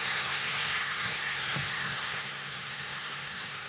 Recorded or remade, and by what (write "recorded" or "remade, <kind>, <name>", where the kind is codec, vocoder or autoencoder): remade, codec, SNAC